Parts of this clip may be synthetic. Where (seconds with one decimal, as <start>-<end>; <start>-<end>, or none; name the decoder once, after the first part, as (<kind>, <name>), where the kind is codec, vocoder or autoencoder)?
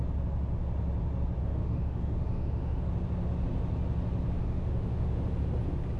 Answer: 1.4-2.8 (autoencoder, DAC-VAE); 4.4-5.3